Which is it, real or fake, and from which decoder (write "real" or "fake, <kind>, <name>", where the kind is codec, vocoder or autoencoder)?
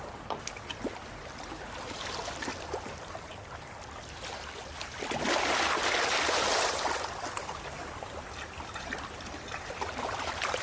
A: real